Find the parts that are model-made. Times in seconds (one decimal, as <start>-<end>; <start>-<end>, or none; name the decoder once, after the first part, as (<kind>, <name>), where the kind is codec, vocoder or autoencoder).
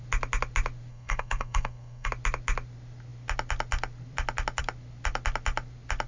0.9-2.1 (codec, SNAC)